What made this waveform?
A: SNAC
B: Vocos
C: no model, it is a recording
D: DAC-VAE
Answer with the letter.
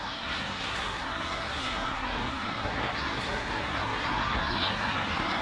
A